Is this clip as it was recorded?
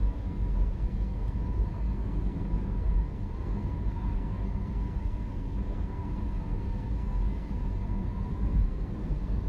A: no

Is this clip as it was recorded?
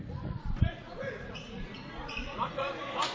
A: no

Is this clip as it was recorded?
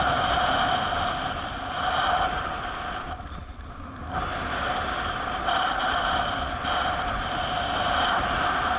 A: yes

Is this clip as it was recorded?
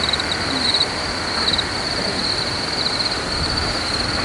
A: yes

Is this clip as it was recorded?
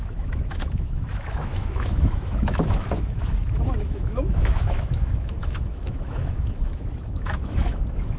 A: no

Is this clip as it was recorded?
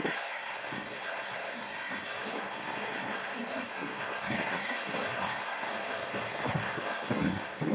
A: no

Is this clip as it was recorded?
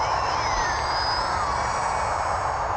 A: yes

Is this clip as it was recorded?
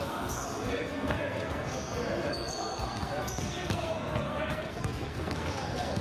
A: no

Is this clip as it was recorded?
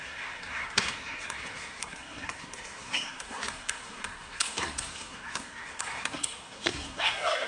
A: no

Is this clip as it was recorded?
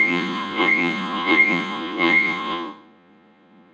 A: no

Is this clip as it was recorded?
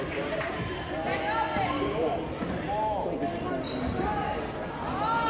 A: yes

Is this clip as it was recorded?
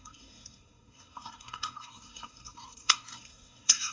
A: no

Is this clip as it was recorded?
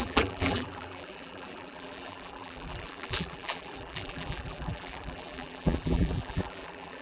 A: no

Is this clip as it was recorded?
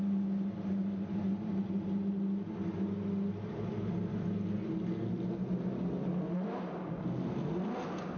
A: yes